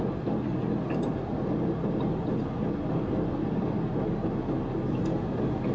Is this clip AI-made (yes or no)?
no